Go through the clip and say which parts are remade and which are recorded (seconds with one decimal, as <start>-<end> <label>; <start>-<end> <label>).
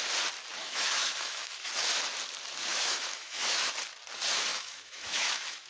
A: 0.0-0.6 recorded; 0.6-1.7 remade; 1.7-2.7 recorded; 2.7-3.7 remade; 3.7-4.5 recorded; 4.5-5.7 remade